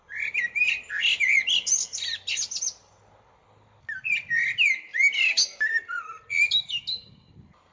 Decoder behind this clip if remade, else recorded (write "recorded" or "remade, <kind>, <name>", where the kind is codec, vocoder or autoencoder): recorded